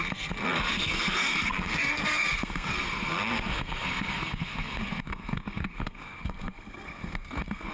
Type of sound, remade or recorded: remade